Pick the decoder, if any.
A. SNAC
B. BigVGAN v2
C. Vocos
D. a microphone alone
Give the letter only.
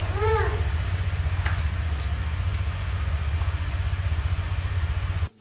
C